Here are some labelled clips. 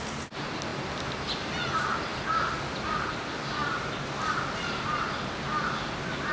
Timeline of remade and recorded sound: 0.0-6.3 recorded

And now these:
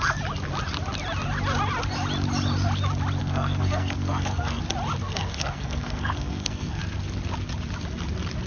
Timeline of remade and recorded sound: 0.0-3.2 recorded; 3.2-4.6 remade; 4.6-5.0 recorded; 5.0-6.8 remade; 6.8-8.5 recorded

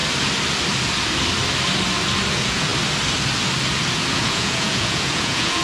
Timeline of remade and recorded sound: 0.0-2.3 recorded; 2.3-2.7 remade; 2.7-4.1 recorded; 4.1-5.6 remade

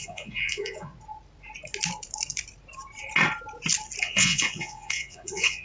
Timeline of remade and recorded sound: 0.0-0.9 remade; 0.9-4.0 recorded; 4.0-5.6 remade

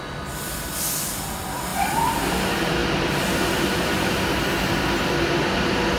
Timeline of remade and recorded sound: 0.0-6.0 recorded

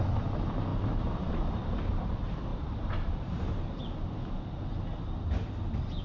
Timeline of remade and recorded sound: 0.0-0.7 recorded; 0.7-1.6 remade; 1.6-2.5 recorded; 2.5-3.8 remade; 3.8-6.0 recorded

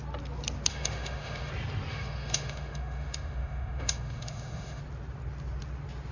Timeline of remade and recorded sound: 0.0-0.7 recorded; 0.7-1.5 remade; 1.5-1.9 recorded; 1.9-4.8 remade; 4.8-6.1 recorded